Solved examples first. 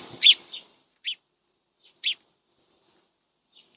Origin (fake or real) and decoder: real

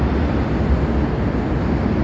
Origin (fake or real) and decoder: real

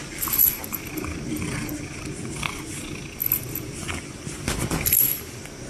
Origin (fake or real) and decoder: real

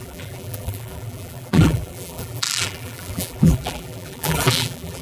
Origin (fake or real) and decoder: fake, vocoder, BigVGAN v2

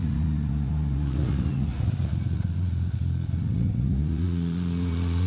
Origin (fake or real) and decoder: fake, vocoder, Vocos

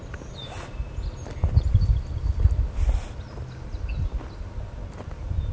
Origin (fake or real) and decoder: real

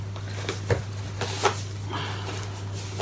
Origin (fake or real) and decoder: real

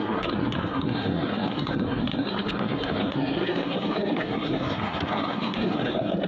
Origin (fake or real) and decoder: fake, codec, SNAC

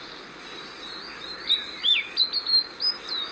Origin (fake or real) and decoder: real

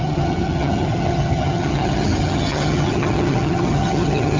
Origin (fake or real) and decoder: fake, vocoder, HiFi-GAN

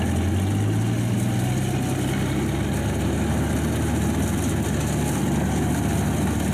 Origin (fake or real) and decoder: real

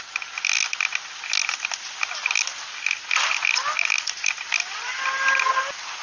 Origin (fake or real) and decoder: real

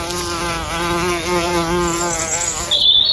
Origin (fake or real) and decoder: real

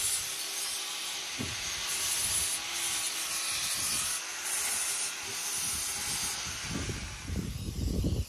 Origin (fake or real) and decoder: real